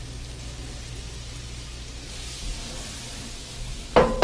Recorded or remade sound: recorded